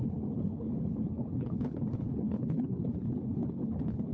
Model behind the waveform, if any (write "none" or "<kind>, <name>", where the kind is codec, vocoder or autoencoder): codec, HILCodec